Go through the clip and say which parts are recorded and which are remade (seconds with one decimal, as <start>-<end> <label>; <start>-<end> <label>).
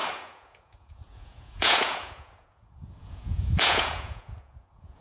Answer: 0.0-5.0 remade